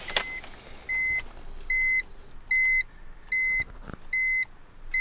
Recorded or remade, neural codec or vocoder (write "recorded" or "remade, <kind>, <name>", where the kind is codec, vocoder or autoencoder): recorded